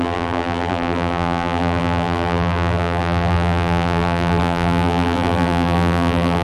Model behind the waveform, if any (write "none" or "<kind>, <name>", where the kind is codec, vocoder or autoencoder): vocoder, BigVGAN v2